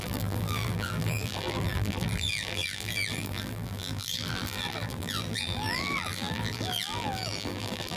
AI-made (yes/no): yes